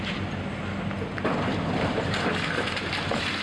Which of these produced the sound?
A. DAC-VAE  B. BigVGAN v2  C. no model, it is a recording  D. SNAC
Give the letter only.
C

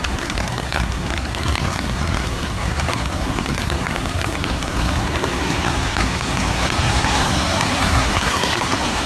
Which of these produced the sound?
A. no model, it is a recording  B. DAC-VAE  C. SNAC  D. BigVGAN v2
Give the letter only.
C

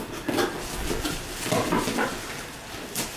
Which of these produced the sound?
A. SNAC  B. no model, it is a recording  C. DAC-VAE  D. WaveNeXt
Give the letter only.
B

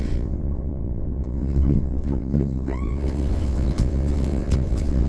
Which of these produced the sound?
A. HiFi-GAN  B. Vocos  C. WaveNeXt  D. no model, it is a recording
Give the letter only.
C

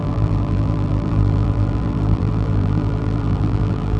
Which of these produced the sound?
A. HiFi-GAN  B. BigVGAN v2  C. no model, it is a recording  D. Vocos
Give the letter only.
B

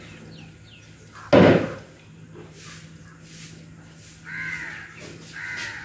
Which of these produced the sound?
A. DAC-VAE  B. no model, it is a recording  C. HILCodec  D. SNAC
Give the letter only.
B